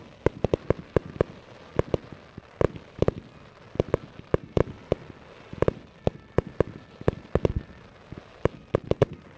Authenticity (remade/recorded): recorded